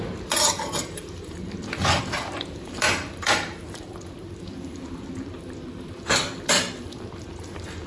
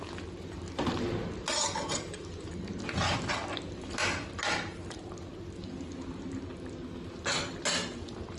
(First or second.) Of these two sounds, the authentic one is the second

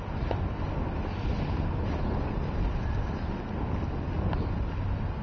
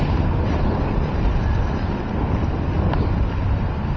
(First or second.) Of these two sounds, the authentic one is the first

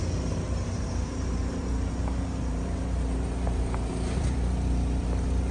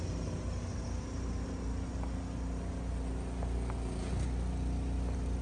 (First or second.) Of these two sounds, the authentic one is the second